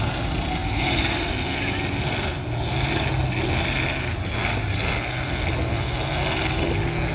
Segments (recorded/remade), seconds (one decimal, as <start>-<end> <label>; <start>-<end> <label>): 0.0-0.6 recorded; 0.6-1.3 remade; 1.3-7.1 recorded